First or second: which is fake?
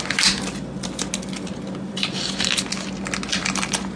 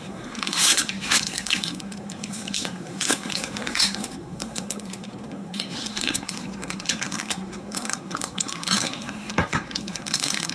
second